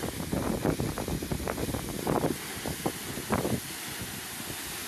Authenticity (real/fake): real